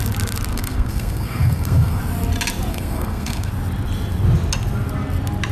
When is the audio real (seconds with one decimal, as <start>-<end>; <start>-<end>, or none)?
0.0-0.5; 2.0-2.7; 3.5-5.5